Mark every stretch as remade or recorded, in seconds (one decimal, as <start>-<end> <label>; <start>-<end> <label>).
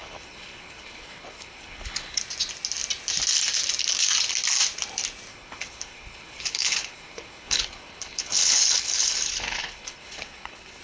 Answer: 0.0-2.2 remade; 2.2-5.3 recorded; 5.3-10.8 remade